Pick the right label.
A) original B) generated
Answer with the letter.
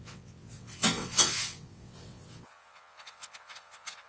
B